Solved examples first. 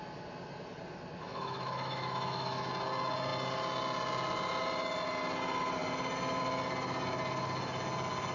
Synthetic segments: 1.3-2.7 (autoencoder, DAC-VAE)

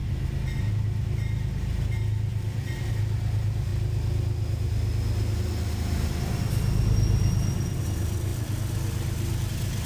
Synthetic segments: 2.3-2.9 (vocoder, BigVGAN v2); 8.3-9.5

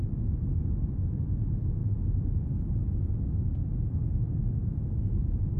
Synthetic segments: none

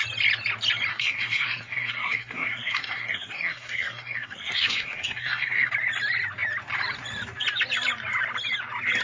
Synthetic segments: 0.9-5.7 (codec, SNAC)

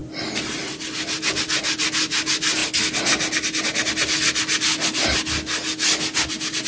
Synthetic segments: none

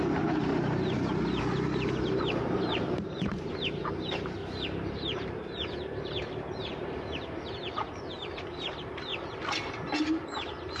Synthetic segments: 0.0-0.5 (vocoder, BigVGAN v2); 1.4-4.4; 4.9-9.1; 10.1-10.8